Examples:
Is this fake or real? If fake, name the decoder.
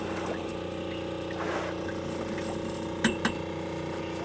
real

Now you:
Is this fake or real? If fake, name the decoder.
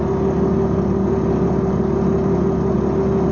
real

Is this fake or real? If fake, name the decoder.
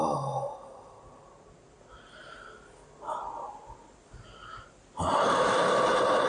real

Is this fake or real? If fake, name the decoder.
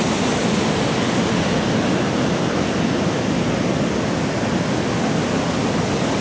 real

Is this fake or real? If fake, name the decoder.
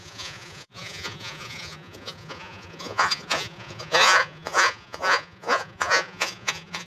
fake, vocoder, Vocos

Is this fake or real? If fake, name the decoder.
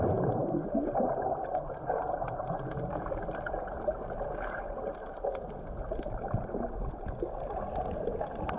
real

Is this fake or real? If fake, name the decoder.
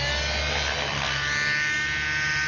real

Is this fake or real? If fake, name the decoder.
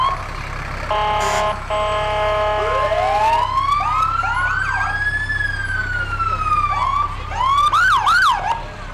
real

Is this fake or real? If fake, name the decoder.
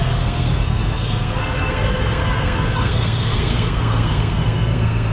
fake, codec, SNAC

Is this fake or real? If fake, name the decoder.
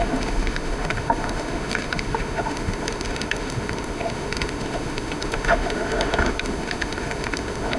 fake, autoencoder, DAC-VAE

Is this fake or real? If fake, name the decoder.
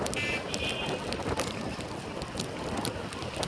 real